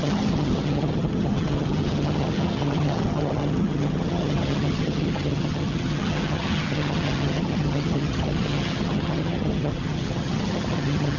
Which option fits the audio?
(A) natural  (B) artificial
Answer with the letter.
B